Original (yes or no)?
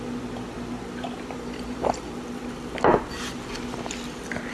yes